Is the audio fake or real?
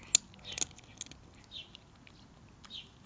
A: real